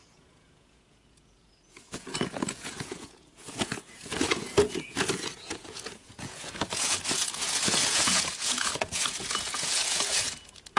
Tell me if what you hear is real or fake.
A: fake